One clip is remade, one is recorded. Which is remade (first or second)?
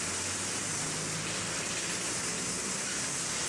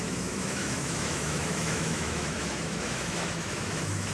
second